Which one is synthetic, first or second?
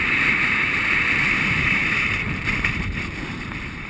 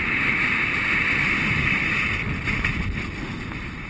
first